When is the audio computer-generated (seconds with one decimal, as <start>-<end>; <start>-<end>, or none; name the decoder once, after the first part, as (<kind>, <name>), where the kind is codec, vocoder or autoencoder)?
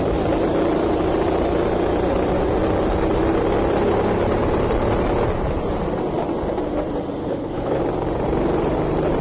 7.2-7.8 (codec, HILCodec)